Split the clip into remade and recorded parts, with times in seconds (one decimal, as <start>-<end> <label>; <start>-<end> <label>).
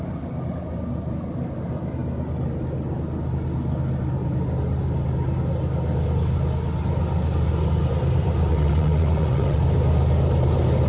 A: 0.0-8.5 recorded; 8.5-9.6 remade; 9.6-10.9 recorded